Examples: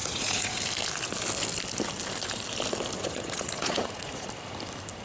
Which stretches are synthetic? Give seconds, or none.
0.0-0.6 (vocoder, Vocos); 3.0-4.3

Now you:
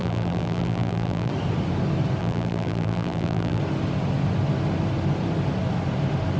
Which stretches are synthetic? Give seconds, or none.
0.0-1.3 (vocoder, BigVGAN v2); 2.2-3.6

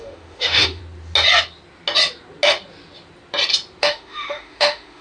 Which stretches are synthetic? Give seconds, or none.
0.0-0.8 (autoencoder, DAC-VAE); 3.8-5.0

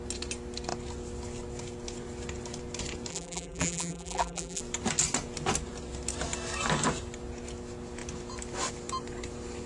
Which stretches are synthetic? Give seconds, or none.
3.1-4.6 (vocoder, BigVGAN v2)

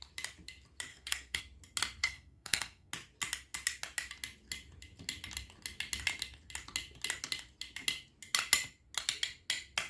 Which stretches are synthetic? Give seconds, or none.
0.9-1.4 (codec, SNAC); 2.0-2.9

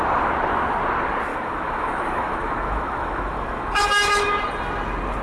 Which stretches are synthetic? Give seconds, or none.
1.3-4.4 (autoencoder, DAC-VAE)

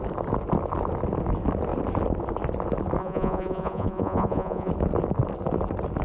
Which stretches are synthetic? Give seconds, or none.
3.0-4.7 (vocoder, Vocos)

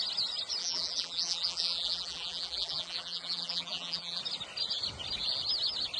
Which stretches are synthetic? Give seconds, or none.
0.6-4.2 (vocoder, BigVGAN v2)